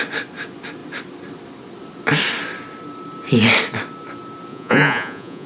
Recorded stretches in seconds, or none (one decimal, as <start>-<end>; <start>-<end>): 0.0-4.5